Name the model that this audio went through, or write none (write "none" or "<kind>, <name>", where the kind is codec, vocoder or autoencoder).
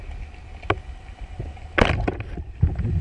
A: none